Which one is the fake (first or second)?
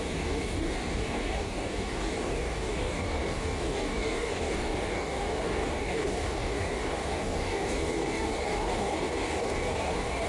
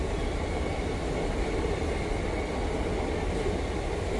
first